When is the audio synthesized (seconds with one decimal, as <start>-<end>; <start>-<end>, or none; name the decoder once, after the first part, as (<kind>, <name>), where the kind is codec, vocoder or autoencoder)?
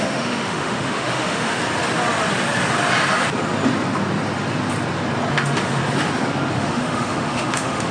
0.0-1.6 (autoencoder, DAC-VAE); 5.3-5.8; 6.5-7.9